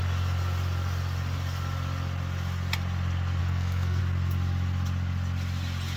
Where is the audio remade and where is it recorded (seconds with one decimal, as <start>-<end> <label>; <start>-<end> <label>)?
0.0-3.4 recorded; 3.4-4.0 remade; 4.0-6.0 recorded